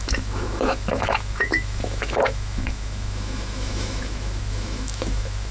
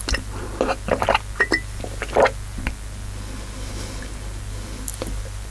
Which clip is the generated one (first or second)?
first